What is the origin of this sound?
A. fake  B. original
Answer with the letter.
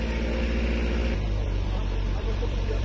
A